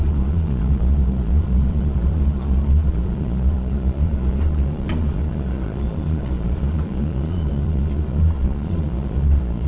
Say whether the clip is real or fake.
fake